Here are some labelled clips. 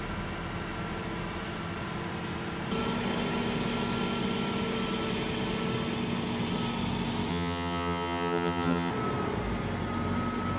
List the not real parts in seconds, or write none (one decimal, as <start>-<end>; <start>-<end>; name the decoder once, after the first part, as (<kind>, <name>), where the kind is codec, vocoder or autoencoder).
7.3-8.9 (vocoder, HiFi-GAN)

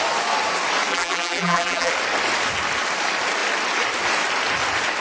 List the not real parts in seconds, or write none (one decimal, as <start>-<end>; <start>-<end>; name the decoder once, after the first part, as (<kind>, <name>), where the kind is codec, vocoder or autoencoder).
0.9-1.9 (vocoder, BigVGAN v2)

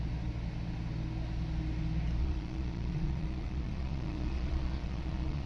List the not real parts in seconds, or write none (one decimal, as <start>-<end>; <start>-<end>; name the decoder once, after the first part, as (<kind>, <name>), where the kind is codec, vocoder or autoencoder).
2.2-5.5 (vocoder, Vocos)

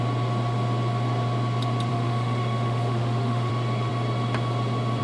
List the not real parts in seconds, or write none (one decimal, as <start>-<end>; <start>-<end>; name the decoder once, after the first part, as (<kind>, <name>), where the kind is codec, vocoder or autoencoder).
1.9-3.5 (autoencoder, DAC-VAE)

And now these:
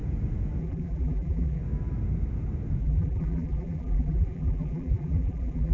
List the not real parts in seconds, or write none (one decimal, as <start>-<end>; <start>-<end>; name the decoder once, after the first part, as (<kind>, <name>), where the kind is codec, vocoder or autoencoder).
0.6-1.6 (vocoder, BigVGAN v2); 2.8-5.7

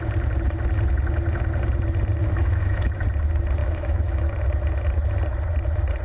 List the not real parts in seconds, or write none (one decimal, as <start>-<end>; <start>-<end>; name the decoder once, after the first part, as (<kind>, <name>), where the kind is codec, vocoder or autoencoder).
2.2-2.9 (autoencoder, DAC-VAE); 3.6-4.3

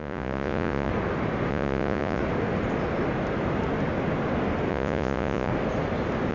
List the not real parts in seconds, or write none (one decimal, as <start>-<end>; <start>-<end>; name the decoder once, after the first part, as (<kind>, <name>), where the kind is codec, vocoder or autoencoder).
0.0-0.9 (vocoder, Vocos); 1.5-2.2; 4.7-5.5

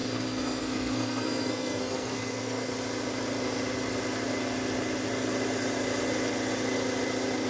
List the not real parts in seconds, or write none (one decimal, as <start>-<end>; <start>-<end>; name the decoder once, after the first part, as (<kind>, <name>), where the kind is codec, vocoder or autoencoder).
0.0-2.7 (codec, SNAC)